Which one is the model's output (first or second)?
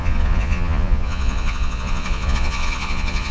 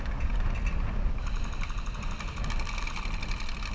first